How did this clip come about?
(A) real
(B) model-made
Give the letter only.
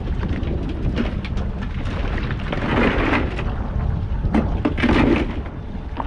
A